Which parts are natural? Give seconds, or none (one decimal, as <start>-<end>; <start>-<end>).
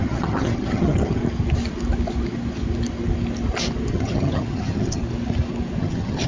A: 1.2-3.9; 5.0-5.8